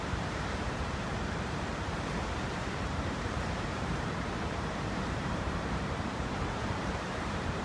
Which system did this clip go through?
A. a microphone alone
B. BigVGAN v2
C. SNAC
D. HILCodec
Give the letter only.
B